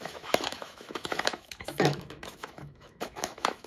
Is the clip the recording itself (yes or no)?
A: no